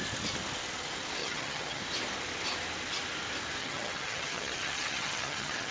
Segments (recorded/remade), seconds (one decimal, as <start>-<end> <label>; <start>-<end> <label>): 0.0-1.2 recorded; 1.2-1.8 remade; 1.8-3.6 recorded; 3.6-5.7 remade

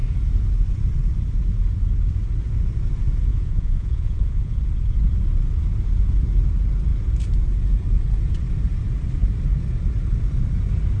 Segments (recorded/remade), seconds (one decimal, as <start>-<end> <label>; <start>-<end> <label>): 0.0-3.3 recorded; 3.3-4.6 remade; 4.6-11.0 recorded